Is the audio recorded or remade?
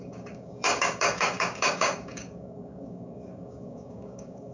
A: remade